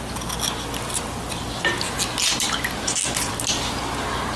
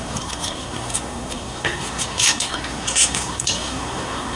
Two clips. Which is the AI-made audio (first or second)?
second